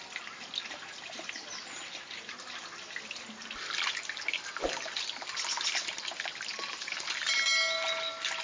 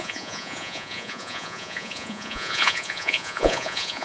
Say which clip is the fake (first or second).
second